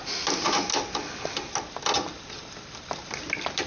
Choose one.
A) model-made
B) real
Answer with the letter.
B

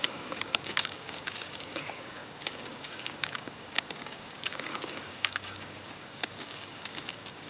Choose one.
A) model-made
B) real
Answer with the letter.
A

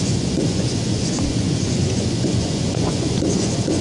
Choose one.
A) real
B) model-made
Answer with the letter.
B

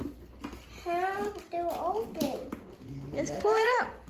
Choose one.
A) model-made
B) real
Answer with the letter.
B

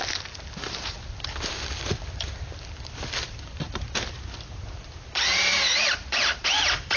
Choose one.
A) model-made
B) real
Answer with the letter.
A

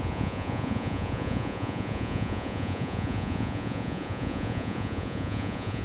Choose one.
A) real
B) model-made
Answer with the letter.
B